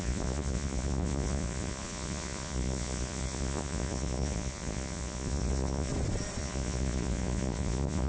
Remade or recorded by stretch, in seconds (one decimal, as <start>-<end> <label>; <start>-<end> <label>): 0.0-5.9 remade; 5.9-6.4 recorded; 6.4-8.1 remade